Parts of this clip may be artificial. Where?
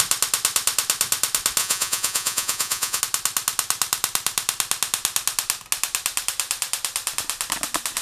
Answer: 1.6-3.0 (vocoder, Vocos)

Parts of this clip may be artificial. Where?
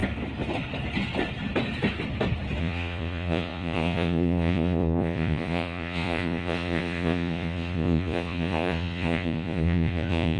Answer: 2.6-10.4 (vocoder, Vocos)